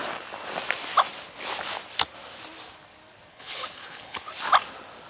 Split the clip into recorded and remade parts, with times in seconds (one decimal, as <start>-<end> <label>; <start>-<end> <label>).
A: 0.0-3.3 recorded; 3.3-4.3 remade; 4.3-5.1 recorded